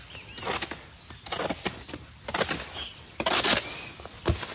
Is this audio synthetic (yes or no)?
no